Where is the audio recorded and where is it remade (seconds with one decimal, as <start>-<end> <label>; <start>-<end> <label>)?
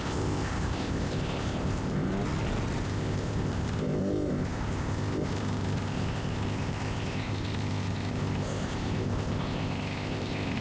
0.0-2.1 remade; 2.1-2.8 recorded; 2.8-10.6 remade